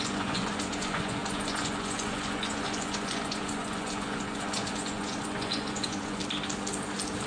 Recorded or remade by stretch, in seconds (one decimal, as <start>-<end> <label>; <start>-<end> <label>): 0.0-6.2 remade; 6.2-7.3 recorded

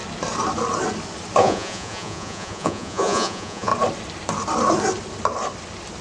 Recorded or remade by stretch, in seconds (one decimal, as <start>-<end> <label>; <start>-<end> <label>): 0.0-1.4 recorded; 1.4-3.7 remade; 3.7-6.0 recorded

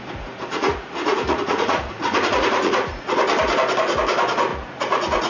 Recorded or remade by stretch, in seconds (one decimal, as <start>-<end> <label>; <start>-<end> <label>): 0.0-3.1 remade; 3.1-4.5 recorded; 4.5-5.3 remade